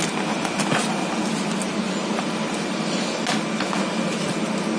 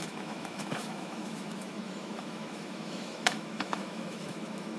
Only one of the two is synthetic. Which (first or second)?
second